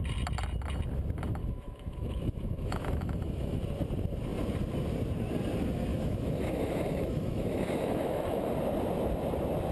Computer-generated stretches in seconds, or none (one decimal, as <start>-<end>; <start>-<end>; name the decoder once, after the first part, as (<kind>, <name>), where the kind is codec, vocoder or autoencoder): 1.4-3.6 (autoencoder, DAC-VAE); 5.9-8.5